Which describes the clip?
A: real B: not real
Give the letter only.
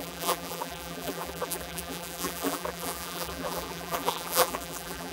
B